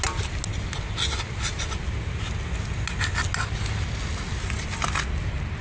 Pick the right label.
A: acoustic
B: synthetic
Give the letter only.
A